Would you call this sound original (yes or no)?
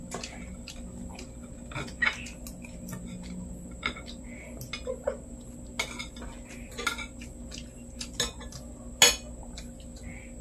yes